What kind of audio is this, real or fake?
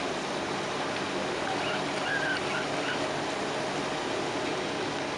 real